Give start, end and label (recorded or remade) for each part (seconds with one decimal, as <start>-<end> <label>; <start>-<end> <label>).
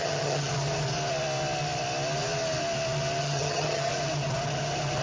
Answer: 0.0-0.5 remade; 0.5-3.2 recorded; 3.2-3.9 remade; 3.9-5.0 recorded